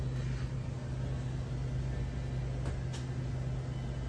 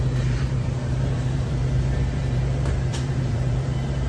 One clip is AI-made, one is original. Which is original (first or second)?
first